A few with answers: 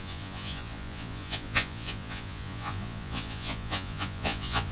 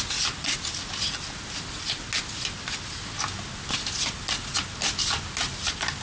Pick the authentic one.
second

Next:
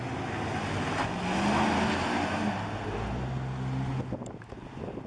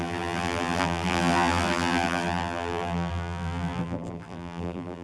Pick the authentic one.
first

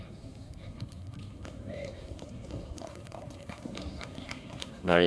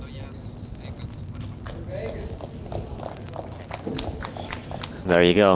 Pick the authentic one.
second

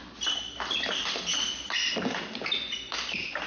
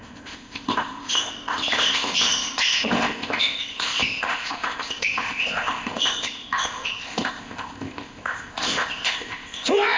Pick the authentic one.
first